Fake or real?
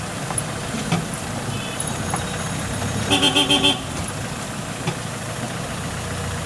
fake